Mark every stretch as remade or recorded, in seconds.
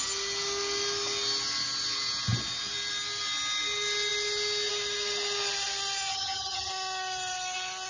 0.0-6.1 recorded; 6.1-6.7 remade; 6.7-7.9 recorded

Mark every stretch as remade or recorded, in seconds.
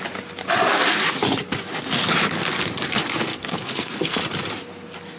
0.0-3.3 recorded; 3.3-4.2 remade; 4.2-5.2 recorded